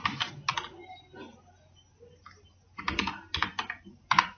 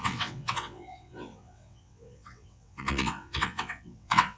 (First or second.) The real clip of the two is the first